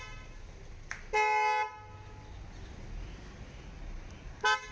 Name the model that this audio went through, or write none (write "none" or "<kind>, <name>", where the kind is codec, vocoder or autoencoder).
none